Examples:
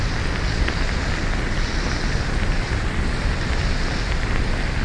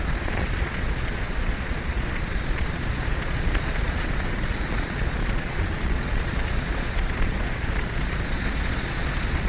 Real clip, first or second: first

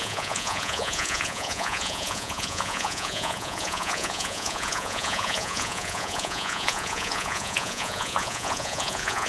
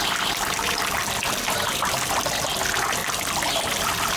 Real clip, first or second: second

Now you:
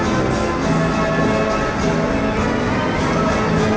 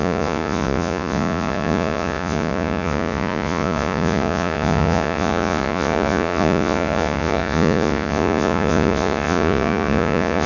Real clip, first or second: first